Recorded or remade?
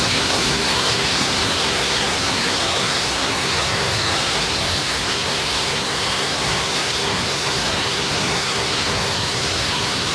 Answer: remade